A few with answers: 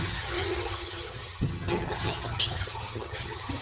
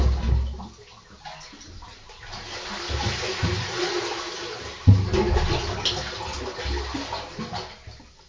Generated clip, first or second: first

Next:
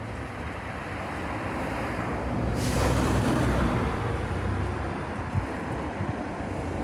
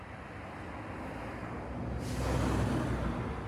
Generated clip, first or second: first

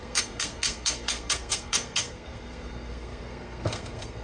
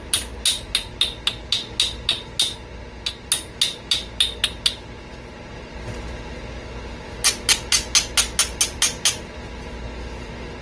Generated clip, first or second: first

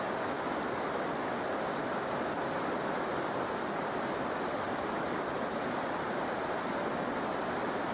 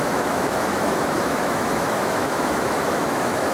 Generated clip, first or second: second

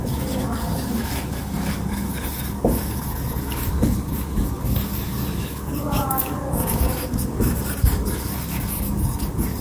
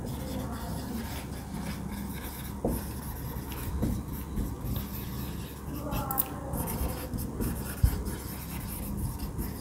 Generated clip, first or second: first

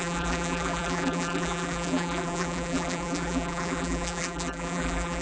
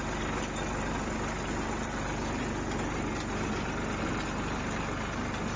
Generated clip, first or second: first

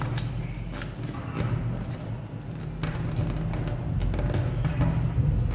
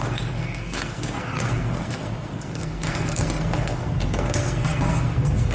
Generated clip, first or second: second